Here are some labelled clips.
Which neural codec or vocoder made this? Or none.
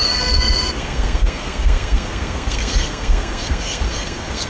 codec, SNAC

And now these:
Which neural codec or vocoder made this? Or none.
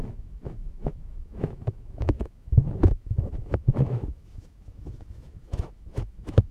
autoencoder, DAC-VAE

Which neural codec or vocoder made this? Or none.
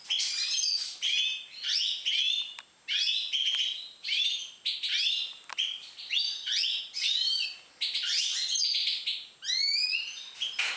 none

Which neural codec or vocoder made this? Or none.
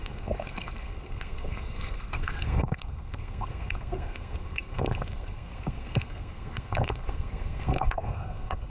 codec, SNAC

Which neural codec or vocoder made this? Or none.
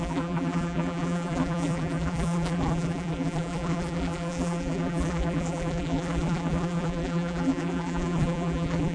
vocoder, BigVGAN v2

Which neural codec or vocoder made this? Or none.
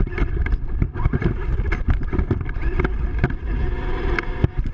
vocoder, BigVGAN v2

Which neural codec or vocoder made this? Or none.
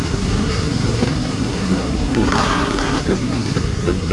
codec, SNAC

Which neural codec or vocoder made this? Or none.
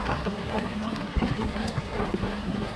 codec, SNAC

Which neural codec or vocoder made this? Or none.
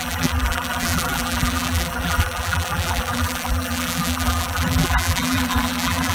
vocoder, BigVGAN v2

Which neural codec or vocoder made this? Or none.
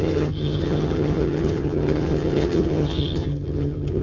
vocoder, HiFi-GAN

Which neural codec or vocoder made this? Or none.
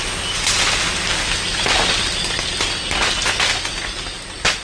none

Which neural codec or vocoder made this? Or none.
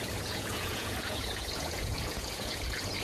vocoder, Vocos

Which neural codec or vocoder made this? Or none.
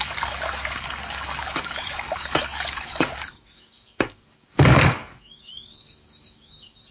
codec, DAC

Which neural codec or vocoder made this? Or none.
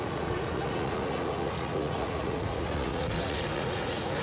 vocoder, Vocos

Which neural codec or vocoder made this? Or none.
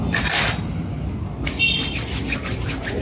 none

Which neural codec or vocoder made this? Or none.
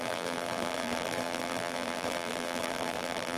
vocoder, BigVGAN v2